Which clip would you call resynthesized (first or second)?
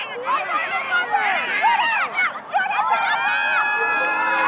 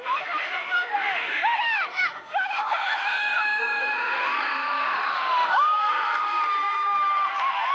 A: second